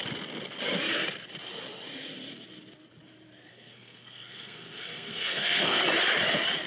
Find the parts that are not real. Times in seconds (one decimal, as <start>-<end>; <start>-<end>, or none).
3.5-5.8